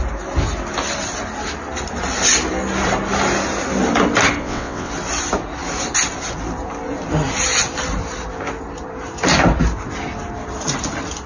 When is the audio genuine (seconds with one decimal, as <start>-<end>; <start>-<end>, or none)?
0.0-4.4; 4.9-11.3